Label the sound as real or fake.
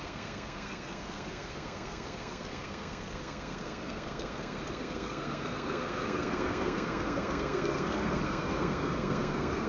fake